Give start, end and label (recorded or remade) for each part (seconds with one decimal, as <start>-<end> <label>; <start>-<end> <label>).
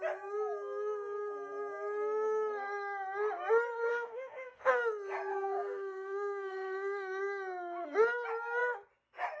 0.0-3.9 recorded; 3.9-4.7 remade; 4.7-5.3 recorded; 5.3-7.2 remade; 7.2-9.4 recorded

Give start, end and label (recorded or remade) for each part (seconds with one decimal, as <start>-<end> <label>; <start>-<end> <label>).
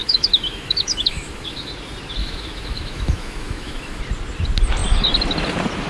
0.0-1.7 remade; 1.7-2.2 recorded; 2.2-4.0 remade; 4.0-5.9 recorded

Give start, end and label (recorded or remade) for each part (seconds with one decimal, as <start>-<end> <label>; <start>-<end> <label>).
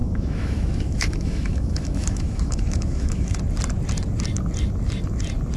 0.0-3.4 remade; 3.4-5.6 recorded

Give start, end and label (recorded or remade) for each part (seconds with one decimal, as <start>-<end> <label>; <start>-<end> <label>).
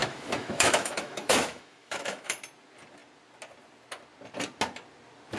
0.0-2.4 remade; 2.4-5.4 recorded